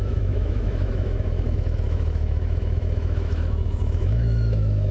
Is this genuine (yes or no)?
no